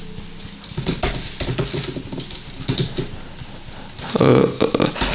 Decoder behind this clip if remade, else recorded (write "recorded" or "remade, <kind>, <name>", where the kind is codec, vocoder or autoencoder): recorded